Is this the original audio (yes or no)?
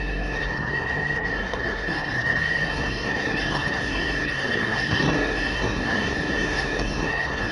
no